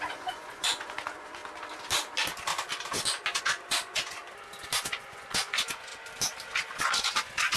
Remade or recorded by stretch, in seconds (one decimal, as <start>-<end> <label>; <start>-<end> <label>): 0.0-1.4 remade; 1.4-3.4 recorded; 3.4-4.2 remade; 4.2-4.8 recorded; 4.8-5.9 remade; 5.9-6.8 recorded; 6.8-7.6 remade